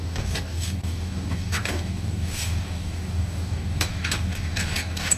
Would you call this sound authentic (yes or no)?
no